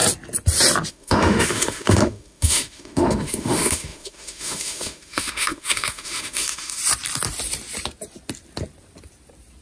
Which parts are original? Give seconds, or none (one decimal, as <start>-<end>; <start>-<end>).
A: 0.0-0.9; 6.8-9.6